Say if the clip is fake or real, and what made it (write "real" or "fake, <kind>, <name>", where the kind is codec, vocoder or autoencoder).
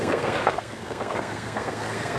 fake, codec, SNAC